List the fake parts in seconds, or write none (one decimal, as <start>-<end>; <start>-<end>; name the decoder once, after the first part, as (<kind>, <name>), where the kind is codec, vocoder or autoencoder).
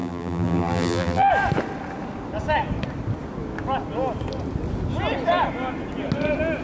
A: 0.0-1.3 (vocoder, BigVGAN v2)